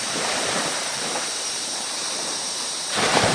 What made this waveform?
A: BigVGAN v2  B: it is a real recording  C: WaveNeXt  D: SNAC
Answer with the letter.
A